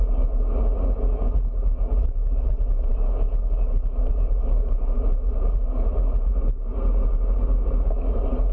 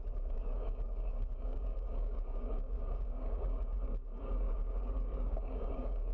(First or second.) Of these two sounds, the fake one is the second